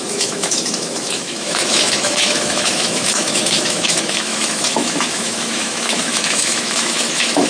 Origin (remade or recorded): remade